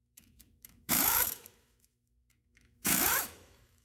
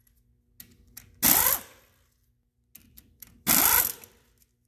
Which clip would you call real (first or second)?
second